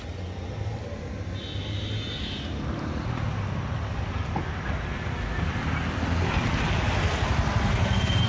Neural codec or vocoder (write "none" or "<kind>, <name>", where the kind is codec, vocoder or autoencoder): none